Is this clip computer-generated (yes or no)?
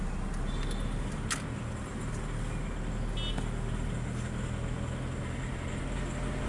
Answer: no